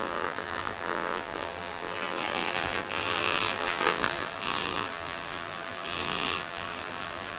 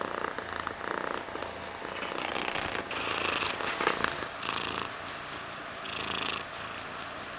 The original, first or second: second